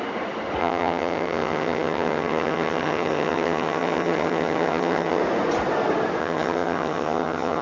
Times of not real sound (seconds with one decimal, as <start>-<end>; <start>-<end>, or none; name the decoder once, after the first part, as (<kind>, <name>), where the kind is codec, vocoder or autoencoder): 0.6-5.2 (vocoder, HiFi-GAN); 6.2-7.6